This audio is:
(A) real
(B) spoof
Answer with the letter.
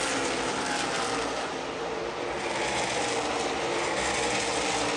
A